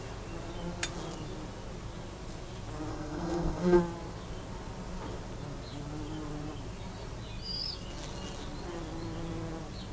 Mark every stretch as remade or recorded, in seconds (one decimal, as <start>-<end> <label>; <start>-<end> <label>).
0.0-2.9 recorded; 2.9-3.8 remade; 3.8-9.9 recorded